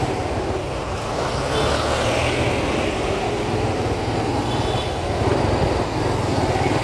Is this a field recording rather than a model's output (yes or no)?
yes